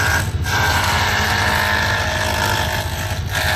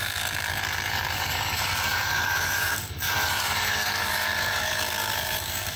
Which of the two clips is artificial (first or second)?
second